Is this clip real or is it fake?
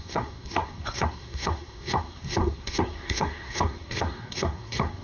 fake